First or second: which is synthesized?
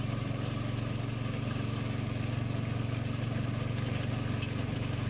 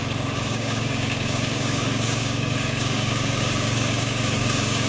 second